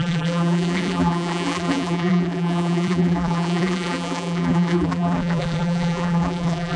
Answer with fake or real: fake